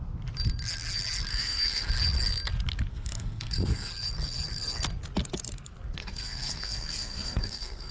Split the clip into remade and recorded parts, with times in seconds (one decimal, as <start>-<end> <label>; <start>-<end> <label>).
0.0-1.3 recorded; 1.3-1.9 remade; 1.9-2.9 recorded; 2.9-3.9 remade; 3.9-6.0 recorded; 6.0-7.9 remade